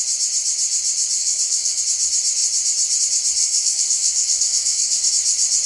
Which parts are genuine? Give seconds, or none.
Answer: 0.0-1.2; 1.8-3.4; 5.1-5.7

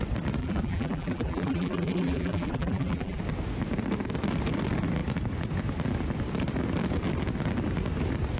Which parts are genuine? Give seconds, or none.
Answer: 0.0-0.4; 3.2-8.4

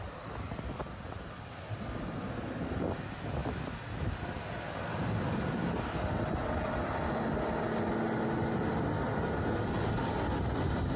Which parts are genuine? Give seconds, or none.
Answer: 0.0-11.0

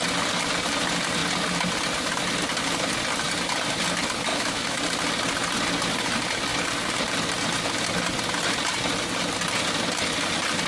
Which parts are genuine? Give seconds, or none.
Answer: 0.0-4.3; 4.8-10.7

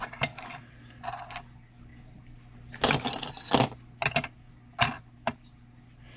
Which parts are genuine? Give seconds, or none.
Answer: 0.0-6.2